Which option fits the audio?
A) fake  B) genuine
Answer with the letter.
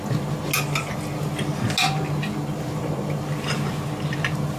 B